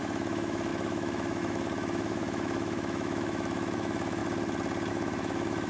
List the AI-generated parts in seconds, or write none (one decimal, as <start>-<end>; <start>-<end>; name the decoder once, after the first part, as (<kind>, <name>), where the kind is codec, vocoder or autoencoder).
0.0-4.2 (autoencoder, DAC-VAE); 4.9-5.7